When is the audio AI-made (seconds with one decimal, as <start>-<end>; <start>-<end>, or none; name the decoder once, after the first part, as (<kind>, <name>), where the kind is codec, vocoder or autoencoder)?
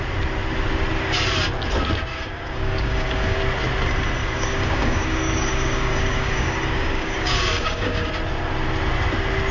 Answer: 2.1-3.4 (codec, DAC); 4.2-8.1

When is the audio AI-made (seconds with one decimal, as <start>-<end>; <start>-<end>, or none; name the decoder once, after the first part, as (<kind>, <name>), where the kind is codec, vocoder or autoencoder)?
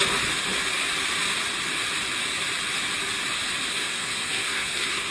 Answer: 3.7-5.1 (codec, SNAC)